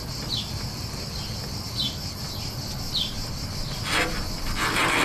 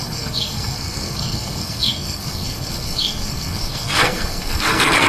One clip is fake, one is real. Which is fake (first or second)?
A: second